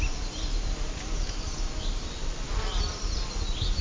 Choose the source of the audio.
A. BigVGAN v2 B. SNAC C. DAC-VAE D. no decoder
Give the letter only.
D